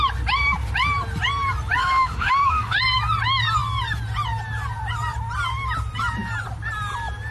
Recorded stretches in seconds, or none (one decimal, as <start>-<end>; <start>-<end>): 0.0-1.8; 2.8-7.3